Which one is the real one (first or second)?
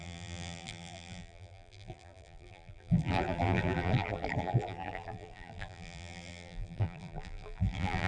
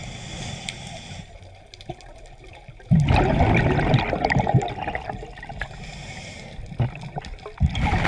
second